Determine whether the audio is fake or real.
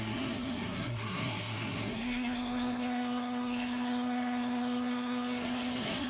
fake